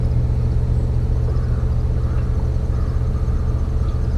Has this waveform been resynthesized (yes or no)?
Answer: no